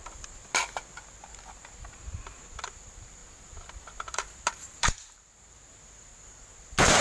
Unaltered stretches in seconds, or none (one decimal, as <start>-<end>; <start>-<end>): 0.0-2.0; 3.2-4.4; 6.1-7.0